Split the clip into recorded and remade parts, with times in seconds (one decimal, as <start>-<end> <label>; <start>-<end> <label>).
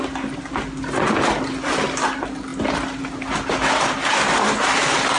0.0-5.2 recorded